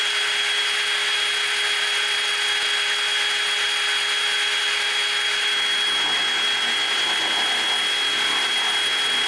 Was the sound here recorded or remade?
recorded